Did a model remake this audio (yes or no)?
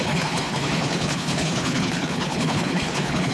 yes